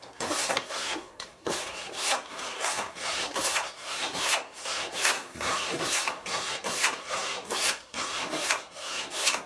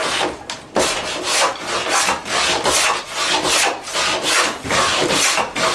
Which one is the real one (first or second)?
second